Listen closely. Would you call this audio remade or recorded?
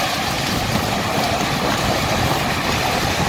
recorded